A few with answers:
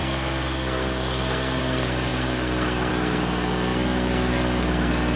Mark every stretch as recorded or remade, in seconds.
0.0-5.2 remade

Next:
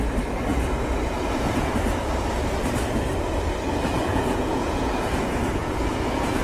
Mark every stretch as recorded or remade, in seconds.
0.0-0.5 recorded; 0.5-1.7 remade; 1.7-4.1 recorded; 4.1-6.4 remade

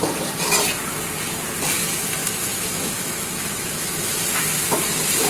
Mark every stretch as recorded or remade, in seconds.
0.0-2.2 recorded; 2.2-4.2 remade; 4.2-5.3 recorded

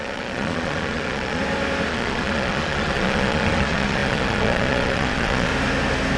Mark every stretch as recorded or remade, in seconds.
0.0-1.4 remade; 1.4-1.9 recorded; 1.9-5.5 remade; 5.5-6.2 recorded

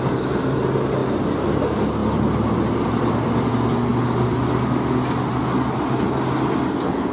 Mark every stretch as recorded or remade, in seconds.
0.0-1.0 recorded; 1.0-1.6 remade; 1.6-2.0 recorded; 2.0-3.5 remade; 3.5-7.1 recorded

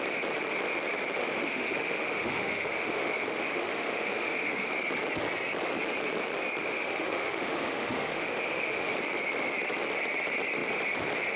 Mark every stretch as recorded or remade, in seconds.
0.0-1.2 recorded; 1.2-4.7 remade; 4.7-6.6 recorded; 6.6-9.0 remade; 9.0-11.4 recorded

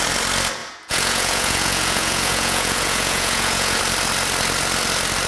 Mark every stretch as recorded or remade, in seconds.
0.0-0.6 recorded; 0.6-3.8 remade; 3.8-5.3 recorded

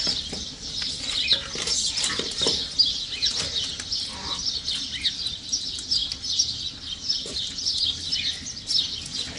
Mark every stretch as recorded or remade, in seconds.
0.0-9.4 recorded